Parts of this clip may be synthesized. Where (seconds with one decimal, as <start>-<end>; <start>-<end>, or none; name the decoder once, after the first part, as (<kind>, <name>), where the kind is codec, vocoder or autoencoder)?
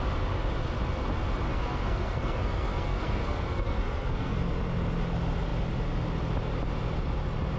1.5-4.5 (codec, SNAC)